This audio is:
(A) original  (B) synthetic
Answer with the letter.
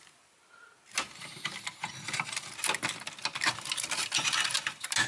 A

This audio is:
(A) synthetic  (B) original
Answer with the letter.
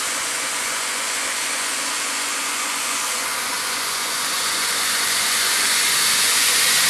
A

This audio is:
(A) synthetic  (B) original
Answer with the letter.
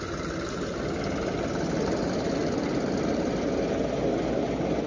B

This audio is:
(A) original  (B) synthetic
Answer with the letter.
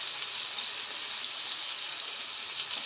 A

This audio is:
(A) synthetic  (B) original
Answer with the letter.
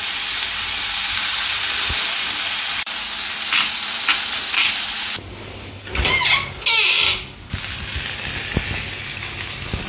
B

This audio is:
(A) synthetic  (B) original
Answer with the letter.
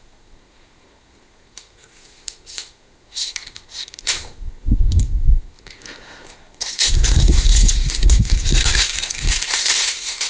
A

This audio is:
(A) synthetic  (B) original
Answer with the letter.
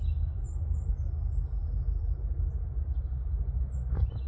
B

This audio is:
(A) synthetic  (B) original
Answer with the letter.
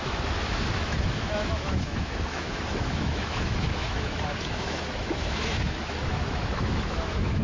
A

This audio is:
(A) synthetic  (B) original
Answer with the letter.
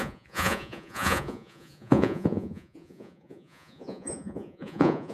A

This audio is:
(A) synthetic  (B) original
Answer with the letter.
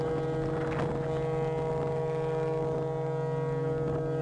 B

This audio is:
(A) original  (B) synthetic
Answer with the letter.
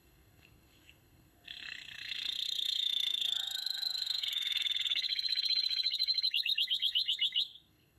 B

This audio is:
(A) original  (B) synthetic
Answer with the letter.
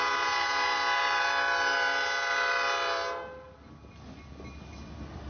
A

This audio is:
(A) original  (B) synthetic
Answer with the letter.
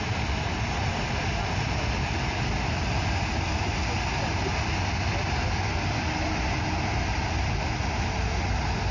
A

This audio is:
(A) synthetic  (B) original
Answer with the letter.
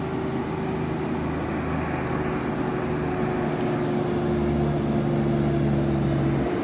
B